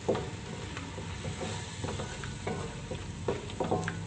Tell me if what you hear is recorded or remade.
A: recorded